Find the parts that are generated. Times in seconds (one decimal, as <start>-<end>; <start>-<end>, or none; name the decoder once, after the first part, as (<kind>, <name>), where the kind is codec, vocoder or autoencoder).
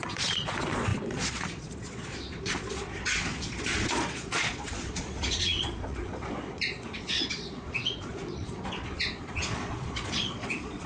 0.0-10.9 (vocoder, Vocos)